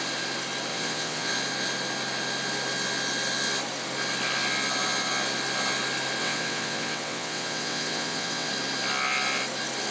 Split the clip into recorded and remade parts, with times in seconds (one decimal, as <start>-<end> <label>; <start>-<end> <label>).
0.0-0.7 recorded; 0.7-1.3 remade; 1.3-6.2 recorded; 6.2-8.5 remade; 8.5-9.9 recorded